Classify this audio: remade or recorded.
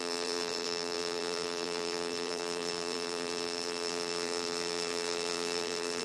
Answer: remade